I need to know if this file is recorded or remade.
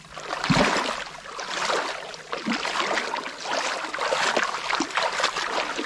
recorded